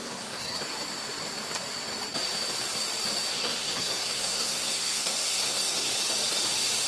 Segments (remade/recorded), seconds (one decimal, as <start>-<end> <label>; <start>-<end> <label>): 0.0-0.6 remade; 0.6-3.3 recorded; 3.3-5.9 remade; 5.9-6.9 recorded